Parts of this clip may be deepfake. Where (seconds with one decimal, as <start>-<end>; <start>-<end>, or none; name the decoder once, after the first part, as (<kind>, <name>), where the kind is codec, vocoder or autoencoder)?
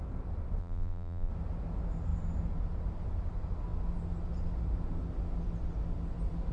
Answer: 0.6-1.3 (vocoder, BigVGAN v2)